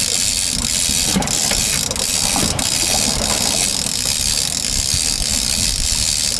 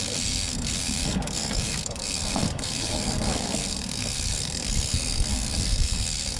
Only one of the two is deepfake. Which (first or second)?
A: second